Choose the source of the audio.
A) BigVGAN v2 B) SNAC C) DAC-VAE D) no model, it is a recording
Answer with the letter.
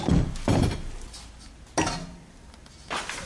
D